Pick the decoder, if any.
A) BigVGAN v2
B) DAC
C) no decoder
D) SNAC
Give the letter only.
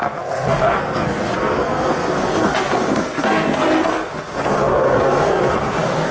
D